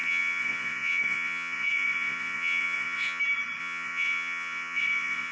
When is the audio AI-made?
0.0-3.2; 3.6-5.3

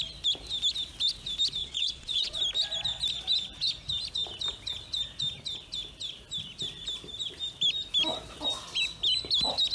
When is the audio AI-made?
1.6-2.4